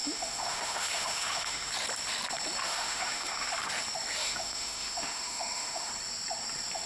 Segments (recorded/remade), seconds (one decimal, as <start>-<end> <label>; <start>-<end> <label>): 0.0-1.7 remade; 1.7-2.6 recorded; 2.6-3.5 remade; 3.5-4.2 recorded; 4.2-5.9 remade; 5.9-6.9 recorded